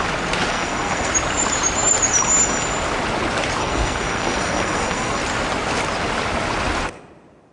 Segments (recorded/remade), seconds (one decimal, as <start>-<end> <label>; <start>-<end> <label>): 0.0-0.5 recorded; 0.5-1.1 remade; 1.1-3.6 recorded; 3.6-5.2 remade; 5.2-7.5 recorded